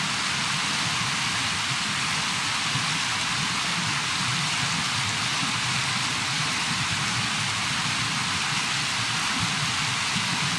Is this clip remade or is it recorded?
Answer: recorded